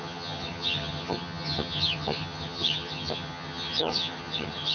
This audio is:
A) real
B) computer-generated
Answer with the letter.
B